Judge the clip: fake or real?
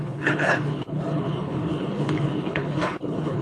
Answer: fake